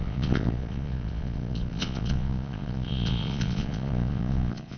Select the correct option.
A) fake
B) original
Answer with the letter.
A